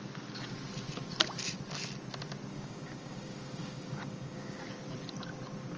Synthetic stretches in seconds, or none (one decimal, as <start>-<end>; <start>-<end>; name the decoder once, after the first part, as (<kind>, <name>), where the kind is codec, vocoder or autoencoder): 2.5-4.6 (codec, DAC)

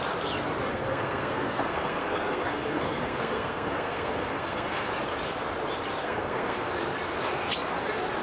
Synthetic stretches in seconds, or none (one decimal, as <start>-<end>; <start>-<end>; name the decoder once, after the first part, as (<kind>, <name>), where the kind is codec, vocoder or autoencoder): 0.7-4.9 (codec, SNAC); 6.0-6.7

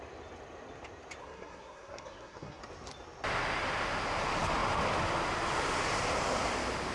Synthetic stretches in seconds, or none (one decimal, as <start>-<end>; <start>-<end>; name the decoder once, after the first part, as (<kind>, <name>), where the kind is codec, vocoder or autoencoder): 1.2-2.6 (codec, SNAC)